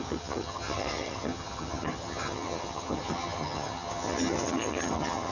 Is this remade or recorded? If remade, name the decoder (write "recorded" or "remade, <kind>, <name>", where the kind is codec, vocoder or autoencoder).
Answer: remade, vocoder, HiFi-GAN